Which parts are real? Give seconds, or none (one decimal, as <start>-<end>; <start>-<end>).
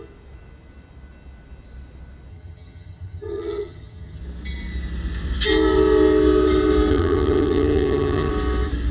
0.0-2.3; 4.2-6.9; 8.3-8.9